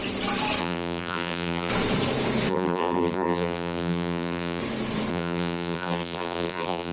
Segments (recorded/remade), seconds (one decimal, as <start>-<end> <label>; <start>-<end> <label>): 0.0-0.6 recorded; 0.6-1.7 remade; 1.7-2.5 recorded; 2.5-4.6 remade; 4.6-5.1 recorded; 5.1-6.9 remade